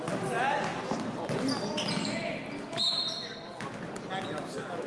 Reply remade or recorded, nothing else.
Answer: recorded